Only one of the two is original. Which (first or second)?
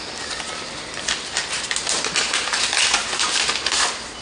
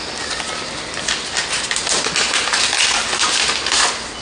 second